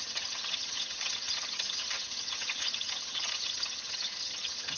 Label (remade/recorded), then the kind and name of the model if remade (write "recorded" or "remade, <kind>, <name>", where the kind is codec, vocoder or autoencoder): remade, vocoder, HiFi-GAN